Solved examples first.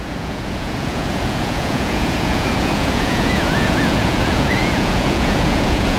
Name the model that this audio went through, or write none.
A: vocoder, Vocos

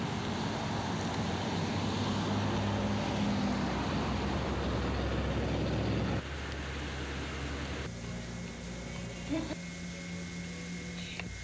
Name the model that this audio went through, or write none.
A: none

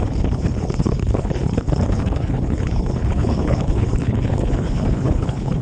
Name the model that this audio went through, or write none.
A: codec, HILCodec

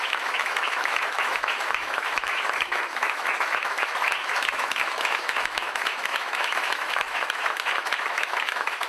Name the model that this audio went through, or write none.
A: autoencoder, DAC-VAE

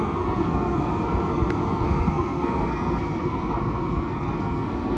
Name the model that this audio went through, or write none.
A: codec, SNAC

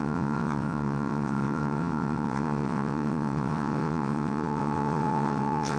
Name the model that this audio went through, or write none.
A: vocoder, WaveNeXt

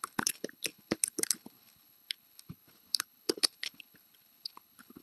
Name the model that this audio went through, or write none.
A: codec, HILCodec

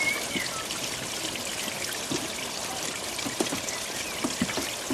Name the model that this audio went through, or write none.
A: none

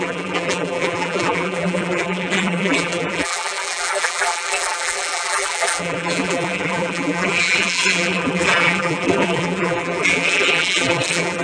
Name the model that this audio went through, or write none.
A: vocoder, BigVGAN v2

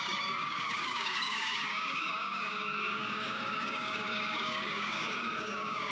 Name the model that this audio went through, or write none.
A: codec, DAC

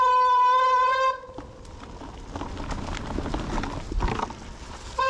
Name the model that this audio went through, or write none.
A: none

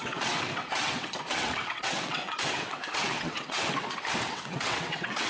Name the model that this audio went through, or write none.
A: vocoder, WaveNeXt